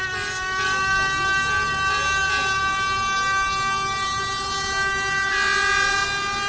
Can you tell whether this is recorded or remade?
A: recorded